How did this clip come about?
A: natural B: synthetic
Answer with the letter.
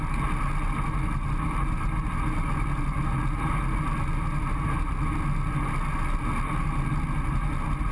A